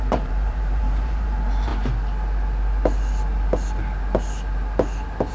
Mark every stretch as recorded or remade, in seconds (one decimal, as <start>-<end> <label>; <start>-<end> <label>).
0.0-1.7 remade; 1.7-5.3 recorded